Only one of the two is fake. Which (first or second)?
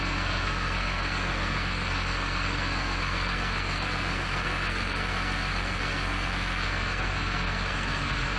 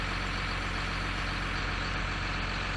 first